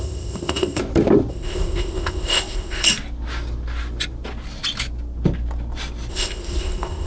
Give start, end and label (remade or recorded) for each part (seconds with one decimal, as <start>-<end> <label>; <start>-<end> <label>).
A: 0.0-0.8 remade; 0.8-1.3 recorded; 1.3-2.9 remade; 2.9-6.1 recorded; 6.1-7.1 remade